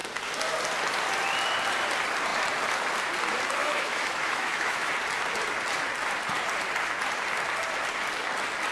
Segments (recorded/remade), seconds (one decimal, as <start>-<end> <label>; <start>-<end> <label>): 0.0-3.6 recorded; 3.6-4.9 remade; 4.9-8.7 recorded